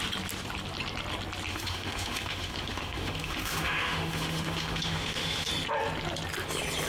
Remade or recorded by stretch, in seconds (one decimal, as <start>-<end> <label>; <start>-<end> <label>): 0.0-1.5 recorded; 1.5-5.5 remade; 5.5-6.9 recorded